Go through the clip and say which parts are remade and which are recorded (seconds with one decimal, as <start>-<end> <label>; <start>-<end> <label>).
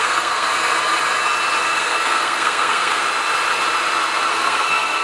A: 0.0-0.5 remade; 0.5-1.6 recorded; 1.6-3.0 remade; 3.0-4.3 recorded; 4.3-5.0 remade